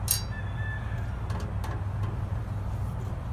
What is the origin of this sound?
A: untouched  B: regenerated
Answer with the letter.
A